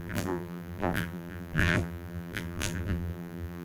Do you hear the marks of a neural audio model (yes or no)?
yes